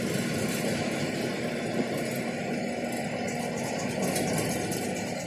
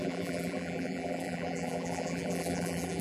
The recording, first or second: first